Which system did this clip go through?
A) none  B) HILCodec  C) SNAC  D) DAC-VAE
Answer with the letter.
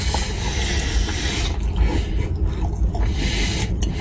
A